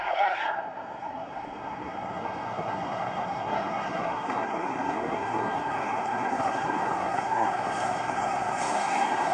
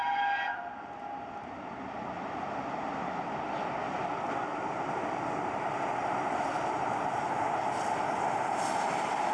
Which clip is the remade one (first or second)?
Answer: first